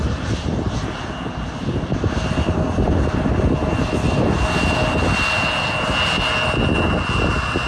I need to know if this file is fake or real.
real